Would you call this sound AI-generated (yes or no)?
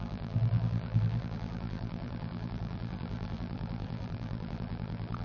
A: yes